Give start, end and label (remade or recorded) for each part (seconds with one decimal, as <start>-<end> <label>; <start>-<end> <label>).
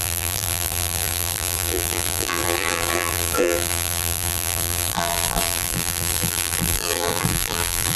0.0-8.0 remade